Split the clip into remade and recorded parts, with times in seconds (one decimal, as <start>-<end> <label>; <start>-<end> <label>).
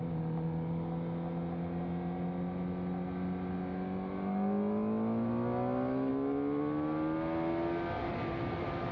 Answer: 0.0-8.9 recorded